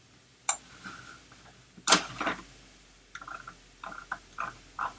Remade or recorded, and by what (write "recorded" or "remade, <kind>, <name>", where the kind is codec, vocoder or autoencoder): recorded